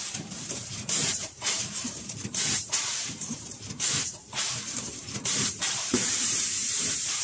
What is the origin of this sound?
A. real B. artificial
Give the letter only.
B